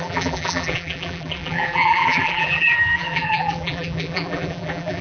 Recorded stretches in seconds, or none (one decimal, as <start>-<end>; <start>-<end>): none